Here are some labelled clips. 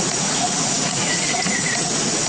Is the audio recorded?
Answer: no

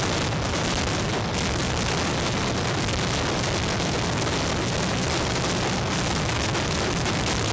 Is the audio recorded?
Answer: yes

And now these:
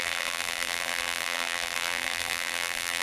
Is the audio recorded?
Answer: no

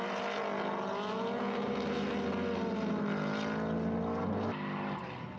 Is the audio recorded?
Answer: yes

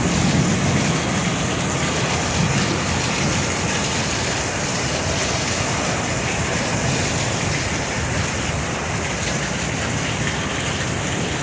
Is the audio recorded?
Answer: yes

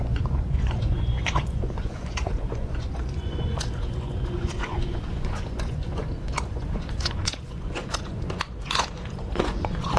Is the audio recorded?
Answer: no